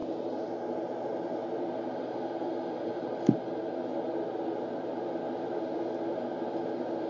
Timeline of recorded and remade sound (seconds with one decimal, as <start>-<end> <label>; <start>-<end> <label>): 0.0-7.1 recorded